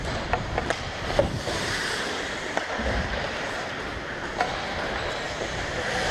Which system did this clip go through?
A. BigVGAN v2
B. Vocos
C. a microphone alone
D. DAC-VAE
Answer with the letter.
A